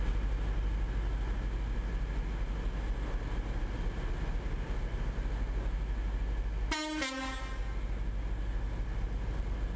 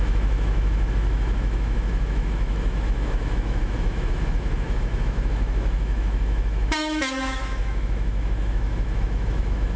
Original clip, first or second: first